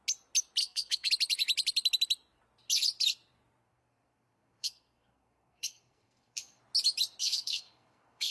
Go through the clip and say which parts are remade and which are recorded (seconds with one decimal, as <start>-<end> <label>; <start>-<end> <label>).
0.0-0.6 recorded; 0.6-1.1 remade; 1.1-3.6 recorded; 3.6-6.6 remade; 6.6-7.2 recorded; 7.2-8.3 remade